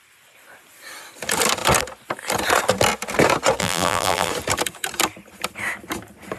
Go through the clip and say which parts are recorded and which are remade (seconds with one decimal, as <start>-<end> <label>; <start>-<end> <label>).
0.0-3.6 recorded; 3.6-4.3 remade; 4.3-6.4 recorded